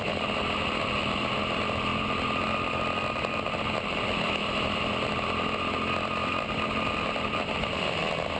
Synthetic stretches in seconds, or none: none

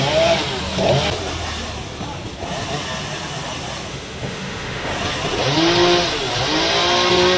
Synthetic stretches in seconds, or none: 3.9-4.9